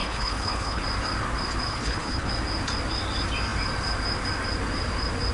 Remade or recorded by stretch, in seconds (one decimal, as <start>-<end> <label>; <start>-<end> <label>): 0.0-0.8 remade; 0.8-1.7 recorded; 1.7-2.3 remade; 2.3-5.3 recorded